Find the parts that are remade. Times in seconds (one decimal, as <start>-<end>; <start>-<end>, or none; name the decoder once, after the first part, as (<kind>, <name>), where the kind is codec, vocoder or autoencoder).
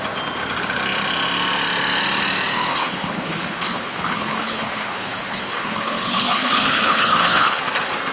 2.7-7.6 (codec, HILCodec)